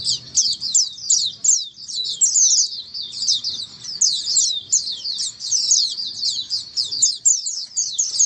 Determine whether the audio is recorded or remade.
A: recorded